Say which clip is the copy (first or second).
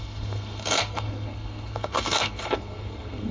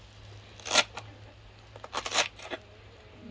first